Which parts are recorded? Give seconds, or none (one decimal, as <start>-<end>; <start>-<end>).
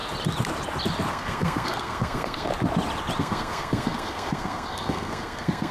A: 0.0-1.1; 2.5-3.2